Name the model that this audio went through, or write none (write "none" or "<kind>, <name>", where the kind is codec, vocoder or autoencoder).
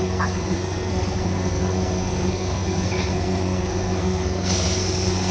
codec, SNAC